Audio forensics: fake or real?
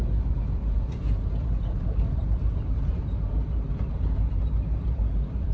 fake